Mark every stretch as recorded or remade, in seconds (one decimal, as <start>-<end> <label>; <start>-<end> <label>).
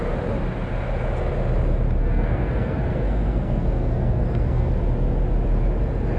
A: 0.0-2.0 recorded; 2.0-4.7 remade; 4.7-6.2 recorded